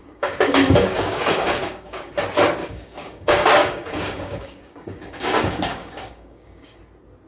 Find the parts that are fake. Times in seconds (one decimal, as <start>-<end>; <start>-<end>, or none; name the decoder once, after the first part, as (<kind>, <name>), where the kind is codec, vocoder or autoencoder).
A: 0.0-2.1 (codec, DAC); 2.6-6.8